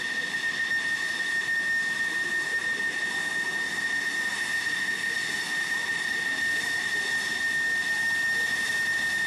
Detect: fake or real real